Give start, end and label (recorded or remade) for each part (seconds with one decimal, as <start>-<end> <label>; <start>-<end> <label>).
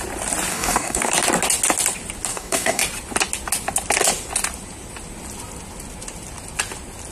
0.0-0.5 recorded; 0.5-1.1 remade; 1.1-2.3 recorded; 2.3-2.8 remade; 2.8-7.1 recorded